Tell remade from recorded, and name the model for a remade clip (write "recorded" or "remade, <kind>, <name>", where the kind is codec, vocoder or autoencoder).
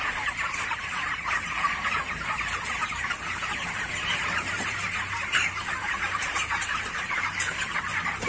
remade, vocoder, BigVGAN v2